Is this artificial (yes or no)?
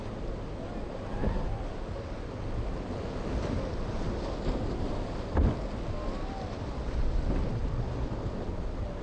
no